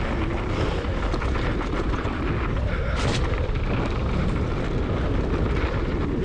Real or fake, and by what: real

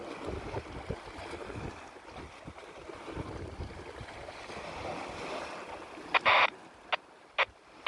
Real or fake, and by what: real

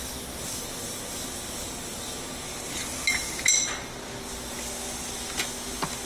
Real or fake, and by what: real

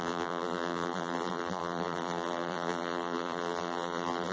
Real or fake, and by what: fake, vocoder, BigVGAN v2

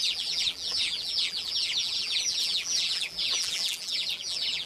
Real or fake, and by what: fake, vocoder, BigVGAN v2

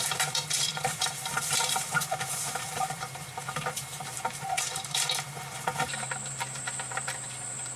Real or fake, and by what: fake, vocoder, BigVGAN v2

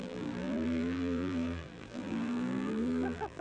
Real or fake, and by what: fake, vocoder, BigVGAN v2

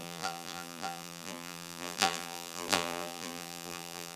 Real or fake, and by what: fake, vocoder, BigVGAN v2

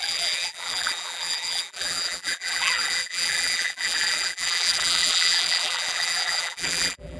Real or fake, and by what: fake, vocoder, BigVGAN v2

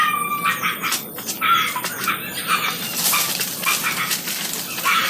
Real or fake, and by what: real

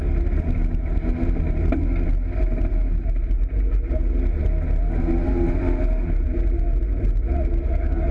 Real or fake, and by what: real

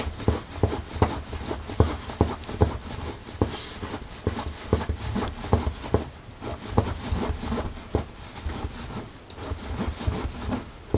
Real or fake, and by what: real